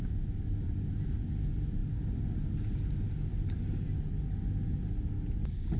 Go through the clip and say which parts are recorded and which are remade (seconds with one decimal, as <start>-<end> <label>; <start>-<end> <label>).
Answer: 0.0-5.8 recorded